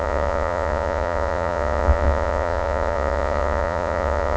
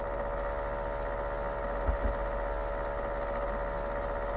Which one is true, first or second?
second